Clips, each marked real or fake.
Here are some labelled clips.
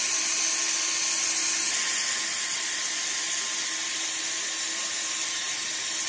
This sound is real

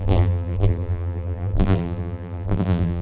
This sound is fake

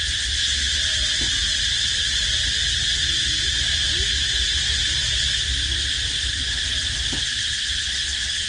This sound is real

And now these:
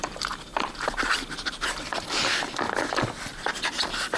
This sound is fake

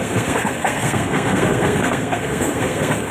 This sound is fake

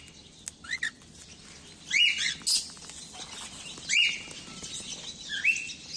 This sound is real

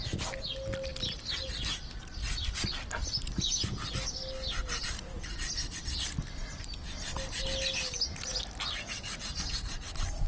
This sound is real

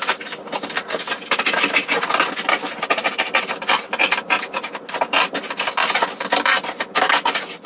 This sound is real